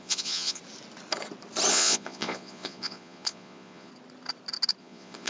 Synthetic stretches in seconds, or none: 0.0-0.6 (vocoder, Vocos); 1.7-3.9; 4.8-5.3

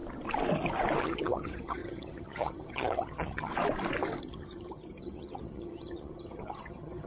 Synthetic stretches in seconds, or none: 1.0-3.5 (vocoder, HiFi-GAN); 4.2-7.1

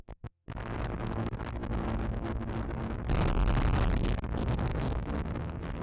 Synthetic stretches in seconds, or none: 4.7-5.3 (autoencoder, DAC-VAE)